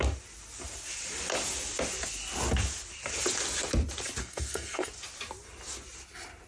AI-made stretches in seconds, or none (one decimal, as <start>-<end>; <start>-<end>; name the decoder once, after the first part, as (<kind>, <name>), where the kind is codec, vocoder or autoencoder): 4.2-4.9 (codec, SNAC)